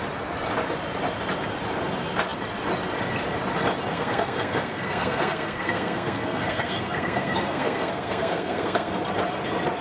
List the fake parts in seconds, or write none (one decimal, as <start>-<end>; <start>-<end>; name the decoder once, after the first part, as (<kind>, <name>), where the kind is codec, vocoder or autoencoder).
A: 3.9-8.9 (codec, SNAC)